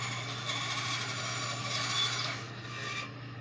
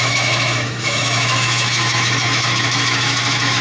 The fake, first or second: second